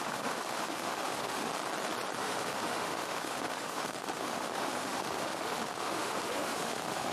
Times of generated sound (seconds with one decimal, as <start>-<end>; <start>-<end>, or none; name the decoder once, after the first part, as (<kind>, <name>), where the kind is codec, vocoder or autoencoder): 0.0-1.5 (autoencoder, DAC-VAE); 2.2-7.1